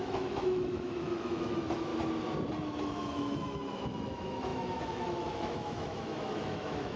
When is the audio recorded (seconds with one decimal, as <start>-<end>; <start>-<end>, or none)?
1.9-2.8